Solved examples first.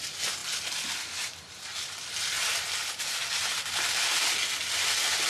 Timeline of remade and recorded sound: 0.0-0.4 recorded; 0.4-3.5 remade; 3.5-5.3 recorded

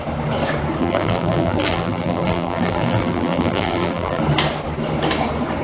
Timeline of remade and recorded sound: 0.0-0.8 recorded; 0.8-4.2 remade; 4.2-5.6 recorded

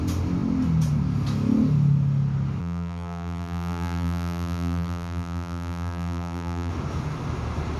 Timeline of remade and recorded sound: 0.0-2.6 recorded; 2.6-6.7 remade; 6.7-7.8 recorded

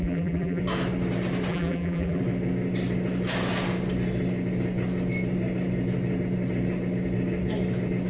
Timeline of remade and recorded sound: 0.0-0.6 remade; 0.6-1.5 recorded; 1.5-2.2 remade; 2.2-8.1 recorded

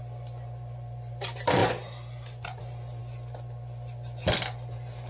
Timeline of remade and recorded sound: 0.0-5.1 remade

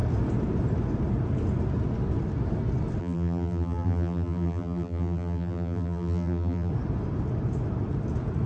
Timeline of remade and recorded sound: 0.0-3.0 recorded; 3.0-6.7 remade; 6.7-8.5 recorded